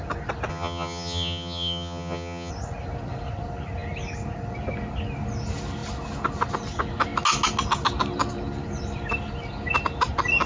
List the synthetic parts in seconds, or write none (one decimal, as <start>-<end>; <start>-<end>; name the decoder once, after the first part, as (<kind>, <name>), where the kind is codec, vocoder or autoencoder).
0.5-2.5 (vocoder, HiFi-GAN)